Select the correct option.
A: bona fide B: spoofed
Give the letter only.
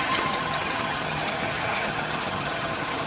B